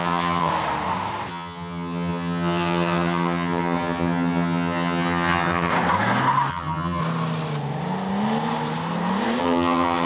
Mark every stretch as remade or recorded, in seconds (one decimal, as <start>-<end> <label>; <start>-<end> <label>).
0.0-0.5 remade; 0.5-1.3 recorded; 1.3-5.7 remade; 5.7-6.5 recorded; 6.5-7.0 remade; 7.0-9.4 recorded; 9.4-10.1 remade

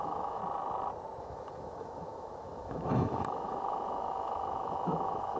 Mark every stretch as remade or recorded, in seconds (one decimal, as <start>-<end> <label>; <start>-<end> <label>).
0.0-0.4 remade; 0.4-1.2 recorded; 1.2-5.4 remade

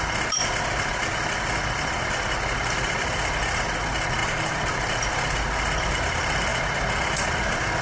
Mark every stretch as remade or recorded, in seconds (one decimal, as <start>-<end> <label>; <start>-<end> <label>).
0.0-4.2 remade; 4.2-4.7 recorded; 4.7-6.5 remade; 6.5-7.3 recorded; 7.3-7.8 remade

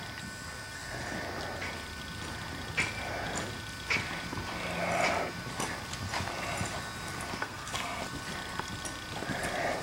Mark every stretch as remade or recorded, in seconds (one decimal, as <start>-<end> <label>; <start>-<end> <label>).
0.0-7.4 recorded; 7.4-8.0 remade; 8.0-9.8 recorded